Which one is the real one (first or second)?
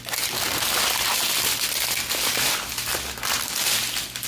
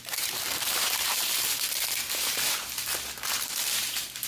first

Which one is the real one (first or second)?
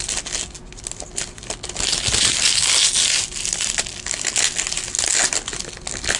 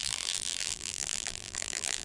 first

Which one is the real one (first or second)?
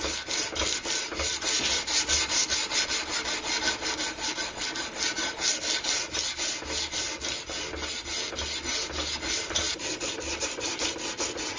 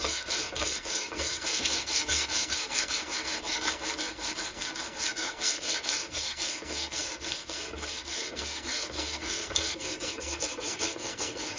first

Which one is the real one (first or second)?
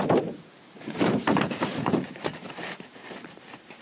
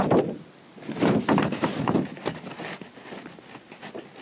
second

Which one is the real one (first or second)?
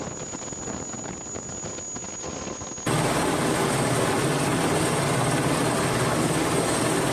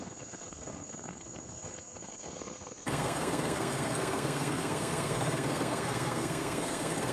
first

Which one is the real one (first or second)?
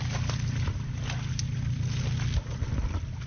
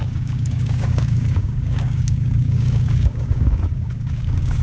first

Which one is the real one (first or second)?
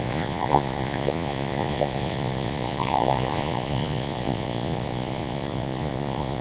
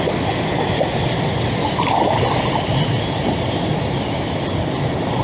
second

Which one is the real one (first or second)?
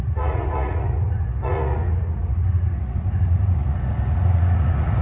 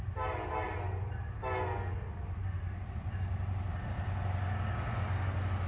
second